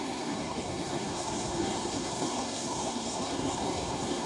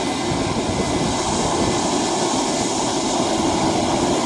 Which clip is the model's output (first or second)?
first